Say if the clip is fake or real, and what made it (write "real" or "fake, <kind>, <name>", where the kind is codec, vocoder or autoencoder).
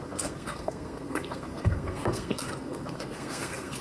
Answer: fake, codec, SNAC